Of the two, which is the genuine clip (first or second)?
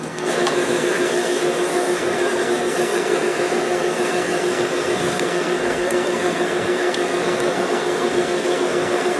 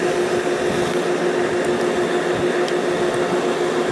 second